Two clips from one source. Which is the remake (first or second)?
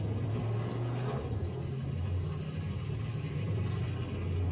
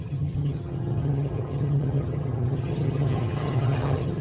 second